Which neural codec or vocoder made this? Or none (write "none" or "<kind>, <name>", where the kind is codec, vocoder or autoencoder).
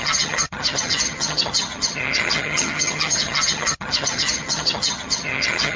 vocoder, HiFi-GAN